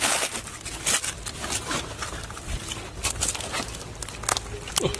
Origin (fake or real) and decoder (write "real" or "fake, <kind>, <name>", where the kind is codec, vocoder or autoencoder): real